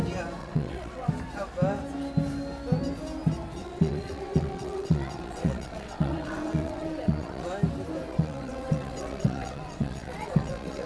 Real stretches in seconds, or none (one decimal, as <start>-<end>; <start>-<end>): 0.0-0.4; 1.1-3.6; 7.5-8.1